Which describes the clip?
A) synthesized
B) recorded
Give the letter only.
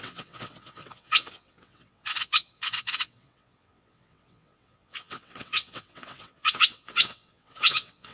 A